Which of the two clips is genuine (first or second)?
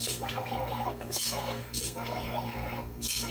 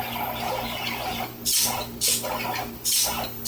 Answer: second